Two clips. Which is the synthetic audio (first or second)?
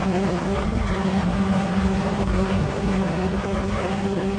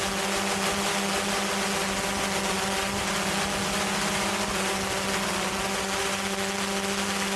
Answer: first